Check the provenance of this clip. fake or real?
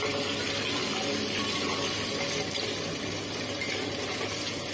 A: real